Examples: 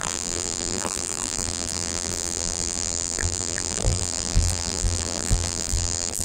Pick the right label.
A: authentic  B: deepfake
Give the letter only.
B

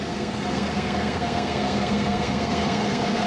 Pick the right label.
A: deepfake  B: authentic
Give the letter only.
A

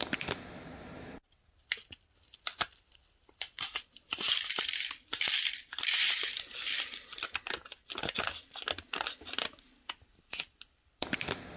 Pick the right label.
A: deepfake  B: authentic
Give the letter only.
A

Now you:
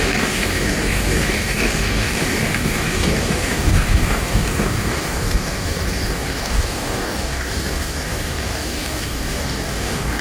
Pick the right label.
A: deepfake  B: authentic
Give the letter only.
A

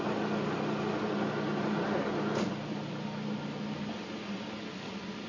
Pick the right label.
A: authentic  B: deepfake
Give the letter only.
A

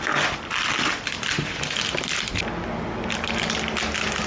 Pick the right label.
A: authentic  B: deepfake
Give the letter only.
A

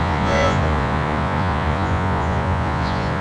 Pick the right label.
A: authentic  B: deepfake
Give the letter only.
B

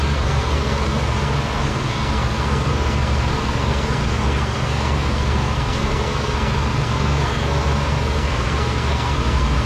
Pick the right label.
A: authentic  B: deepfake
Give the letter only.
B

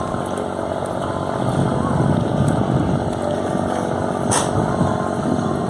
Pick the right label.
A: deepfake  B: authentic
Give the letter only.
B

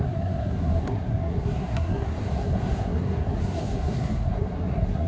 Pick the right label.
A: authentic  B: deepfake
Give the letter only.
B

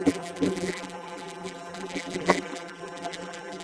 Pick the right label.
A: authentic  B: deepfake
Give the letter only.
B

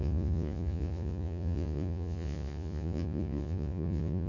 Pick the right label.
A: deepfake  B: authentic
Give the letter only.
A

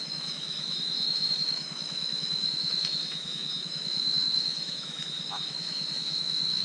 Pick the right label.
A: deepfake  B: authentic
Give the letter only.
A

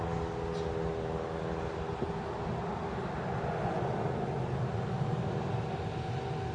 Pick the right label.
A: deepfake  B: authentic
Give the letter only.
B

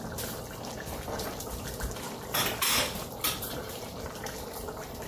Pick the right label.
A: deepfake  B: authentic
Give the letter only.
B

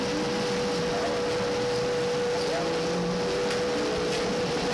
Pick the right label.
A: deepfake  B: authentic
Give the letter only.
B